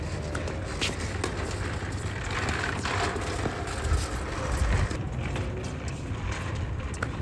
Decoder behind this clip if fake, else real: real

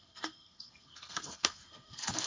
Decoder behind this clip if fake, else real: fake, codec, SNAC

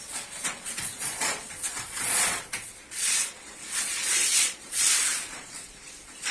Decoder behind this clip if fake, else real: fake, vocoder, Vocos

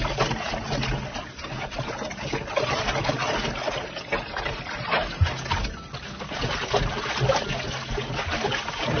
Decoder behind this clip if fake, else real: real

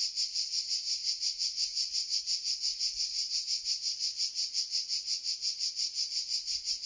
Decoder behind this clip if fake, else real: real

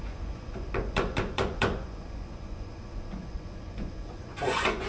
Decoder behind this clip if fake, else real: fake, vocoder, Vocos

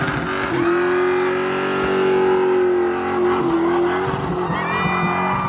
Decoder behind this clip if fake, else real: real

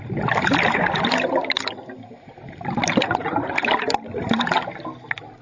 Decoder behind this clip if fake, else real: real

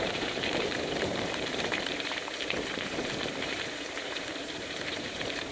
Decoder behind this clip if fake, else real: fake, vocoder, BigVGAN v2